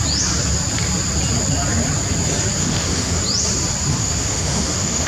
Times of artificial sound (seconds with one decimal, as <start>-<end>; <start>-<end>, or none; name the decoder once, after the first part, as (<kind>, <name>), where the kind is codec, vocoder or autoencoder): 2.6-3.2 (autoencoder, DAC-VAE); 3.9-5.1